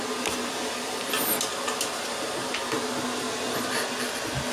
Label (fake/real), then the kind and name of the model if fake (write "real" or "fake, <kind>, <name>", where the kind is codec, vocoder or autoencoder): real